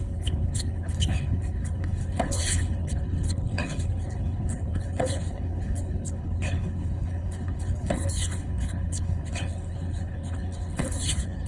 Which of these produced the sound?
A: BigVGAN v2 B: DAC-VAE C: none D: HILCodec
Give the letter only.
D